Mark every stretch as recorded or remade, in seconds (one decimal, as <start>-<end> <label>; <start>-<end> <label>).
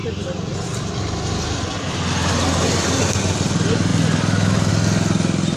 0.0-5.6 recorded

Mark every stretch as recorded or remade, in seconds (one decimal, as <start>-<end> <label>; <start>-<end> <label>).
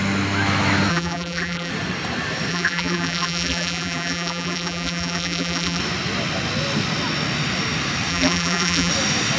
0.0-0.9 recorded; 0.9-1.7 remade; 1.7-2.5 recorded; 2.5-5.8 remade; 5.8-8.1 recorded; 8.1-8.9 remade; 8.9-9.4 recorded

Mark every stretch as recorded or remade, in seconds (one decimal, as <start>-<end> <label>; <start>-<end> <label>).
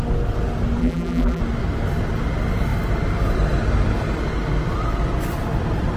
0.0-0.8 recorded; 0.8-1.4 remade; 1.4-6.0 recorded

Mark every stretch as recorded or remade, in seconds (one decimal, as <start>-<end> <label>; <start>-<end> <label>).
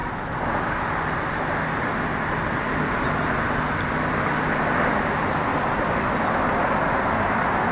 0.0-5.5 recorded; 5.5-7.1 remade; 7.1-7.7 recorded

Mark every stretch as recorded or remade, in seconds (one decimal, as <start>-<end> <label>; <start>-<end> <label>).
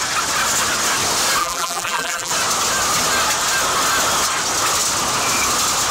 0.0-1.4 recorded; 1.4-2.3 remade; 2.3-5.9 recorded